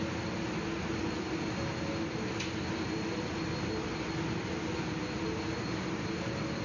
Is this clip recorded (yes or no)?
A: yes